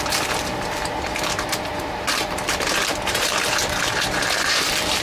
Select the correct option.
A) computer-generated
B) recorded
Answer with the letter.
A